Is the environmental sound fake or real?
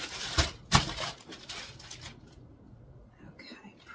real